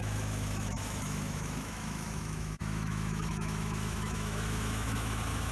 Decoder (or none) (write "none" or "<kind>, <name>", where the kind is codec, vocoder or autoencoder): autoencoder, DAC-VAE